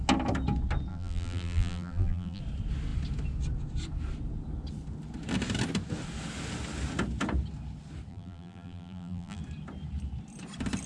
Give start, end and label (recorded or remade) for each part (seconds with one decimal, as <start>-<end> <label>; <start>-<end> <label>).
0.0-0.9 recorded; 0.9-2.4 remade; 2.4-8.1 recorded; 8.1-9.4 remade; 9.4-10.9 recorded